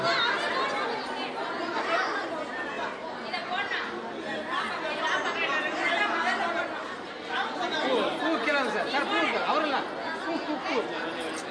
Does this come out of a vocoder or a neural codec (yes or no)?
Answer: no